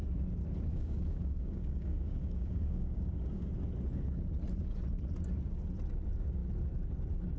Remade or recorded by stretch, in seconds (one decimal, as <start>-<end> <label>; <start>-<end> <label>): 0.0-0.7 recorded; 0.7-3.5 remade; 3.5-7.4 recorded